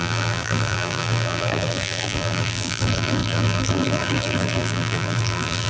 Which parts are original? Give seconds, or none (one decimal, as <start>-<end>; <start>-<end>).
none